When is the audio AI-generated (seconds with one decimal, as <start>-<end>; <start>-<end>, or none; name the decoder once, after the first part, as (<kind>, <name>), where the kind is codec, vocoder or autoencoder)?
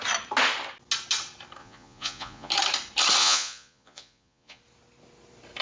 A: 1.6-2.5 (vocoder, Vocos); 3.2-4.6